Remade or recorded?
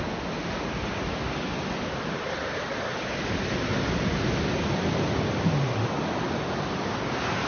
recorded